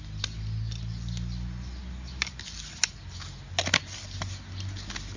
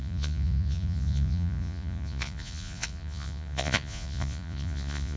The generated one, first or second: second